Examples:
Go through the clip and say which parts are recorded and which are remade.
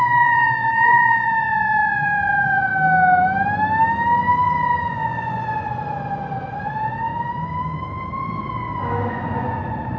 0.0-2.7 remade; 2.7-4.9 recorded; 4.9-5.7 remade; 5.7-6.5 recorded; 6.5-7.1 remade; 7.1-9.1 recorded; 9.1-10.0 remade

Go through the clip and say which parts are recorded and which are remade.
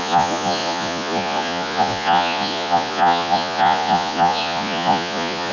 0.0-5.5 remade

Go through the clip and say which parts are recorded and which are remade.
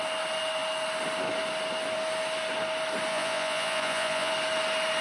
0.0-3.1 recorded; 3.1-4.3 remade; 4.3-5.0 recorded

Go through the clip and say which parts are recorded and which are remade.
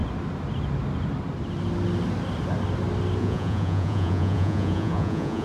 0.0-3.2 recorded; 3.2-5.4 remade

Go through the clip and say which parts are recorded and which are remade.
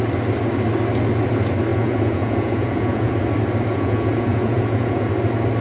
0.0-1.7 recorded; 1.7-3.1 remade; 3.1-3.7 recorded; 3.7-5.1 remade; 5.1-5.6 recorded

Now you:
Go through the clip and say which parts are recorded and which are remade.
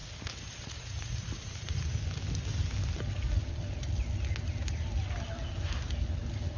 0.0-1.8 remade; 1.8-6.6 recorded